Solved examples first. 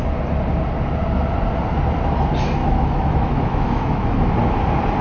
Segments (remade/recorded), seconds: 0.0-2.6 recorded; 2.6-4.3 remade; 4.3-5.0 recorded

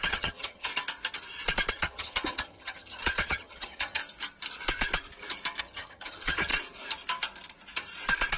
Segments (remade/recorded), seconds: 0.0-0.7 remade; 0.7-1.7 recorded; 1.7-4.0 remade; 4.0-5.6 recorded; 5.6-6.5 remade; 6.5-8.4 recorded

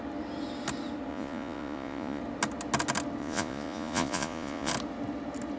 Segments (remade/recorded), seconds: 0.0-1.1 recorded; 1.1-2.2 remade; 2.2-3.2 recorded; 3.2-4.7 remade; 4.7-5.6 recorded

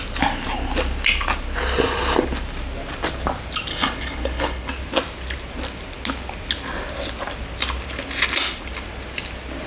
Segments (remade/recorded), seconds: 0.0-3.7 recorded; 3.7-4.7 remade; 4.7-9.7 recorded

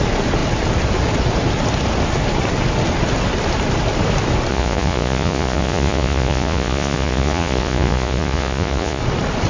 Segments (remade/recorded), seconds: 0.0-4.5 recorded; 4.5-9.0 remade; 9.0-9.5 recorded

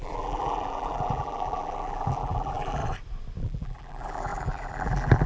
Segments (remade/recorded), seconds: 0.0-2.8 remade; 2.8-3.4 recorded; 3.4-5.3 remade

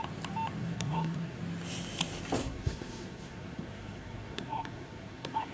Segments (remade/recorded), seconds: 0.0-0.6 recorded; 0.6-1.4 remade; 1.4-2.4 recorded; 2.4-5.5 remade